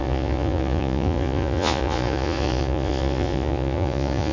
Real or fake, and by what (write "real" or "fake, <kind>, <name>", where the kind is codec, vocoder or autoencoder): fake, vocoder, Vocos